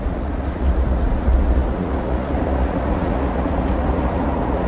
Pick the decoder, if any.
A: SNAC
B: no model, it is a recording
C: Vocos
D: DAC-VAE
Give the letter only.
C